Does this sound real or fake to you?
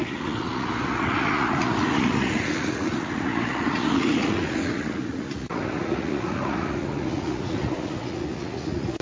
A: fake